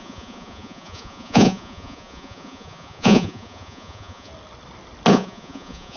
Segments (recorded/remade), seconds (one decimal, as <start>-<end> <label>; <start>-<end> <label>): 0.0-4.3 remade; 4.3-5.1 recorded; 5.1-6.0 remade